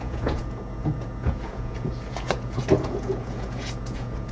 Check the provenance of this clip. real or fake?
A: fake